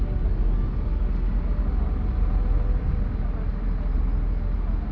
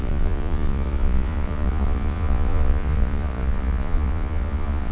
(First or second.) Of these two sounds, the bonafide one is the first